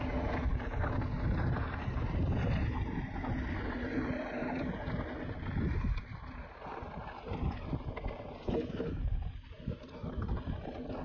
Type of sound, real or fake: real